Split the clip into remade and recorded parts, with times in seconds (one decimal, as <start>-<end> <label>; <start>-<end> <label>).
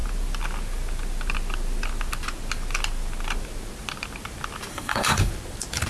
0.0-4.7 recorded; 4.7-5.3 remade; 5.3-5.9 recorded